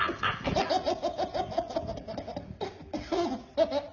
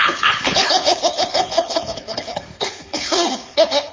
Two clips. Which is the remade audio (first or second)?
second